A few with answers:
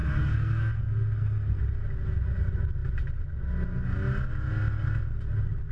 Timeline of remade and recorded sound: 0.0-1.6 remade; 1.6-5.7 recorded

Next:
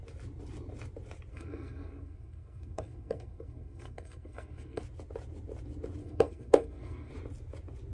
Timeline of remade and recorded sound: 0.0-1.3 recorded; 1.3-4.8 remade; 4.8-6.0 recorded; 6.0-7.1 remade; 7.1-7.9 recorded